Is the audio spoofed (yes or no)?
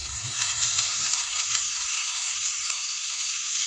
yes